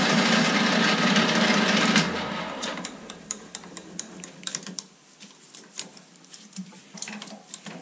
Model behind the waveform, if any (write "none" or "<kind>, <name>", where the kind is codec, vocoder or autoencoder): vocoder, BigVGAN v2